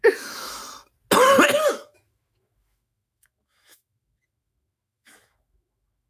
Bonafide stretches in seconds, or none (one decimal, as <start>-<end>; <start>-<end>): 0.6-1.7